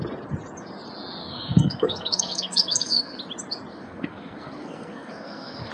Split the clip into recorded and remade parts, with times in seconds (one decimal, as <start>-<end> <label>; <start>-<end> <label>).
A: 0.0-1.2 recorded; 1.2-3.2 remade; 3.2-3.7 recorded; 3.7-5.7 remade